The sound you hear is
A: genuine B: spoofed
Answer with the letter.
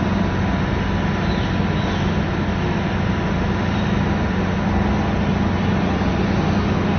A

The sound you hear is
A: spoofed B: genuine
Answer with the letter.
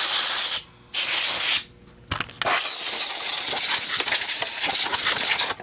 B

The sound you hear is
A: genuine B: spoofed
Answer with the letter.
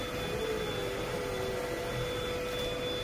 A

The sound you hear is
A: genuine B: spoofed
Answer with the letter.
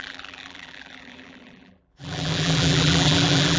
B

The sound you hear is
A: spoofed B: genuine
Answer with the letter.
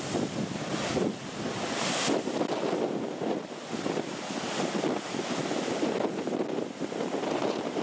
B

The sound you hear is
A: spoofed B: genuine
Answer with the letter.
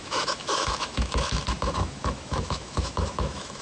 A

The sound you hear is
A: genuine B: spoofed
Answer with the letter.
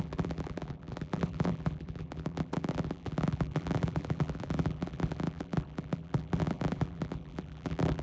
B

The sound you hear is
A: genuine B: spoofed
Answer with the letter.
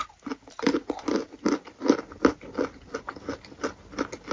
A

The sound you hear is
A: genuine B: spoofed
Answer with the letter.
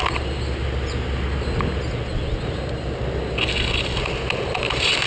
A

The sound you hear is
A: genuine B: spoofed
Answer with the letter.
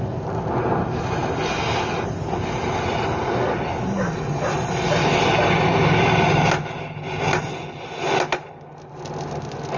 A